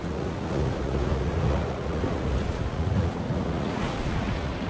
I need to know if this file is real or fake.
fake